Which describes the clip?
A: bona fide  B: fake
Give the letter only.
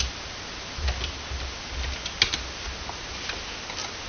A